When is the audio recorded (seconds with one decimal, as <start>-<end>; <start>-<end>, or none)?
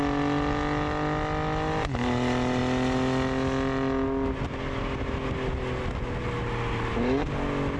0.0-7.8